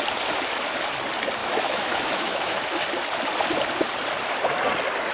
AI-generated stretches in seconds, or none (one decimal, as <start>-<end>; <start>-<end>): 1.4-2.6